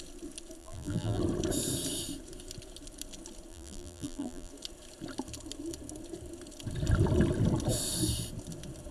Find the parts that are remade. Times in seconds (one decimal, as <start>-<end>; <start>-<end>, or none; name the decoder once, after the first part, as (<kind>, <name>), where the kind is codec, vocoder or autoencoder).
0.6-1.2 (vocoder, BigVGAN v2); 3.5-4.5